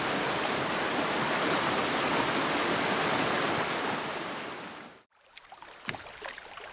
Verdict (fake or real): real